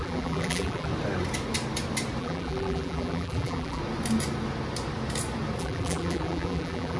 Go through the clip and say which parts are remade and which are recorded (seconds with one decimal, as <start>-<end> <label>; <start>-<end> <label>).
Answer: 0.0-0.9 remade; 0.9-2.2 recorded; 2.2-3.8 remade; 3.8-5.6 recorded; 5.6-7.0 remade